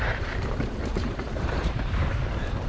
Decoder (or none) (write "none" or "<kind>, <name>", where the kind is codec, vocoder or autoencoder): vocoder, BigVGAN v2